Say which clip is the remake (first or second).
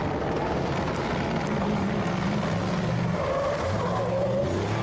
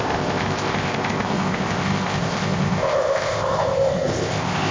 second